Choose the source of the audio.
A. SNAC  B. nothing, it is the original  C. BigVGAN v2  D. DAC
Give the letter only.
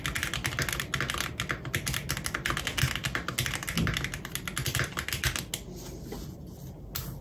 B